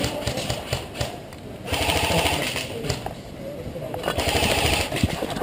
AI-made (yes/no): yes